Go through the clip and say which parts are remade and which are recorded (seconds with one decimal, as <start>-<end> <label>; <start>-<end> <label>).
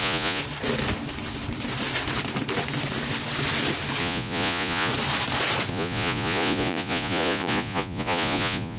0.0-0.4 remade; 0.4-4.0 recorded; 4.0-4.9 remade; 4.9-5.7 recorded; 5.7-8.8 remade